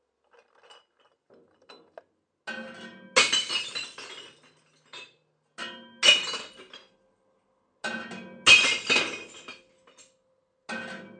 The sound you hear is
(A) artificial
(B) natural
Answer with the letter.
B